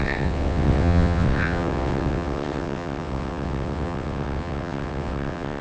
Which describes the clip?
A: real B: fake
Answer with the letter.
B